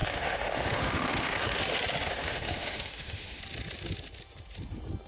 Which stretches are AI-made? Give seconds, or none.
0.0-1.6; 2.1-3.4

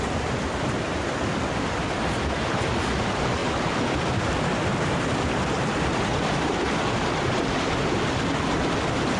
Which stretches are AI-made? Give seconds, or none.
none